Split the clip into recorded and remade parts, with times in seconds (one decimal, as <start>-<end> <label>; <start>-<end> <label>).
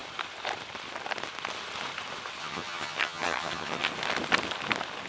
0.0-2.4 recorded; 2.4-3.9 remade; 3.9-5.1 recorded